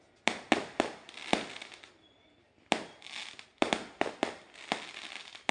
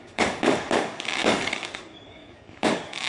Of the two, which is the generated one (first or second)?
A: second